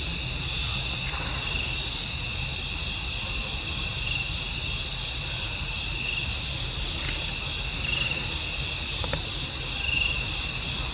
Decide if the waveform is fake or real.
real